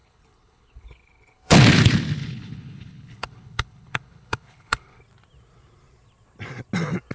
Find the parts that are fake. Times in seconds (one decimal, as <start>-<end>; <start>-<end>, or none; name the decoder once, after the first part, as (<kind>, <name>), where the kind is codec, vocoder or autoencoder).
0.0-1.6 (codec, HILCodec); 2.2-5.0